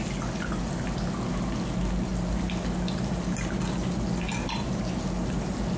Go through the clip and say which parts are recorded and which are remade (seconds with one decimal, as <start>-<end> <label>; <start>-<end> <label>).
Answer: 0.0-5.8 recorded

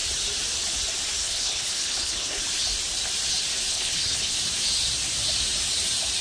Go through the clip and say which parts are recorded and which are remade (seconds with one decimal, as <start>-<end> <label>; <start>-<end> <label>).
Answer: 0.0-1.2 recorded; 1.2-2.4 remade; 2.4-3.7 recorded; 3.7-4.4 remade; 4.4-6.2 recorded